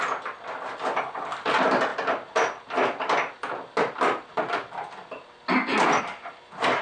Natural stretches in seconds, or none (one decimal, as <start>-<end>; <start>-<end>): 0.0-6.8